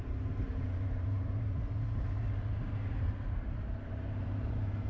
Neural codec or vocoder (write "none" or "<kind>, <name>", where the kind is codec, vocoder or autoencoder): vocoder, BigVGAN v2